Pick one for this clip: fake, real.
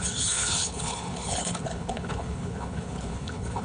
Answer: fake